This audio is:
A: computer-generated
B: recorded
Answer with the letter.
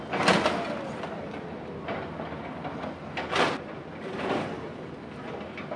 B